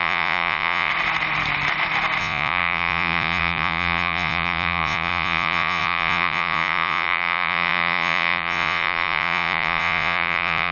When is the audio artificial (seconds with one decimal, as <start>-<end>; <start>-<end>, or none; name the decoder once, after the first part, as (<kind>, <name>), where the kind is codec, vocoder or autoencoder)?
0.0-0.9 (vocoder, Vocos); 2.2-10.7